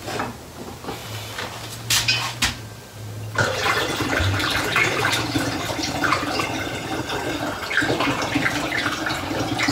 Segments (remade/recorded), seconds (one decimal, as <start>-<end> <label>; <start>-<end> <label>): 0.0-4.8 recorded; 4.8-6.2 remade; 6.2-9.7 recorded